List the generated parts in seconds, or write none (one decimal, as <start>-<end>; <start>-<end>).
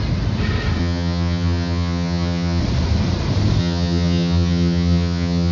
0.8-2.6; 3.6-5.5